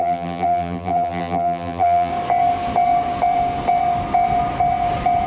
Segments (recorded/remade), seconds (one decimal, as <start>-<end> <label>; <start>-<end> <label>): 0.0-2.1 remade; 2.1-5.3 recorded